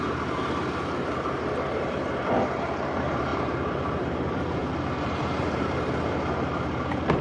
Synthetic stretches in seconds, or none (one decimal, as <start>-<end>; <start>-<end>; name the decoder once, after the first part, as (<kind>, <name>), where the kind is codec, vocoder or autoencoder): 0.0-4.6 (vocoder, BigVGAN v2); 5.2-7.2